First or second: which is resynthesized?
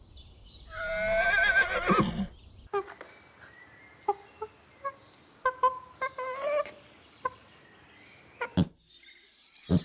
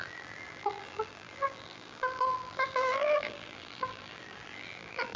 second